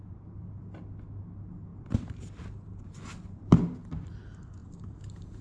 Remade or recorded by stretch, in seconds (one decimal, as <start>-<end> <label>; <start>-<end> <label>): 0.0-1.7 recorded; 1.7-3.4 remade; 3.4-4.6 recorded; 4.6-5.4 remade

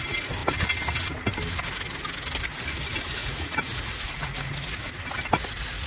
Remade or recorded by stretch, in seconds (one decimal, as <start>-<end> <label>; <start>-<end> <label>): 0.0-3.2 recorded; 3.2-4.5 remade; 4.5-5.9 recorded

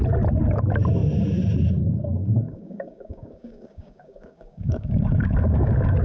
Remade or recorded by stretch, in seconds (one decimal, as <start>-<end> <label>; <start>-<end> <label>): 0.0-2.2 recorded; 2.2-6.0 remade

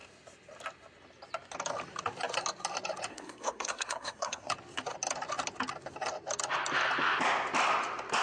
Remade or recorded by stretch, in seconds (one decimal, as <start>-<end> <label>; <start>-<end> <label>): 0.0-3.1 recorded; 3.1-4.5 remade; 4.5-8.2 recorded

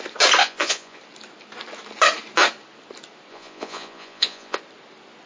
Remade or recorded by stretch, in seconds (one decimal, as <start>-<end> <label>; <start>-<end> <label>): 0.0-0.4 recorded; 0.4-1.0 remade; 1.0-3.3 recorded; 3.3-4.6 remade; 4.6-5.3 recorded